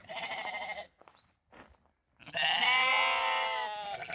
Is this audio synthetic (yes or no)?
no